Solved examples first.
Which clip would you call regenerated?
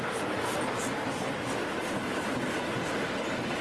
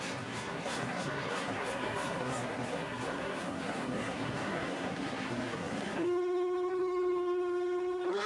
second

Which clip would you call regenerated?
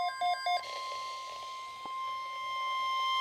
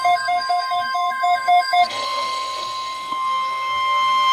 second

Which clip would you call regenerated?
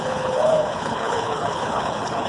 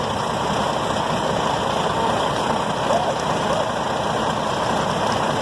first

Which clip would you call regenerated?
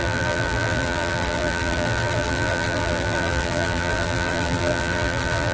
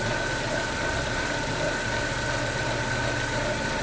first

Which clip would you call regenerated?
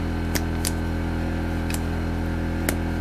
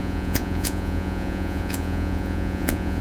second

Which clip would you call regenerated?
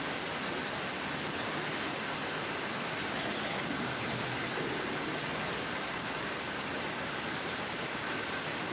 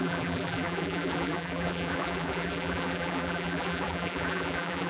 second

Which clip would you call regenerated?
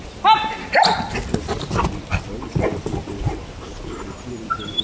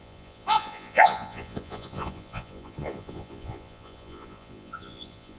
second